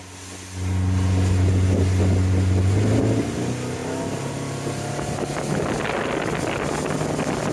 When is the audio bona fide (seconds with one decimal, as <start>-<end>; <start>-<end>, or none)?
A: 0.0-7.5